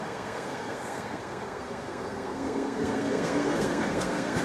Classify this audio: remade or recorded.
remade